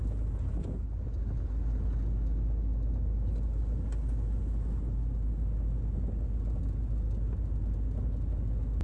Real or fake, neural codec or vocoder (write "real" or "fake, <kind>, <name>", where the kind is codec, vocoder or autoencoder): real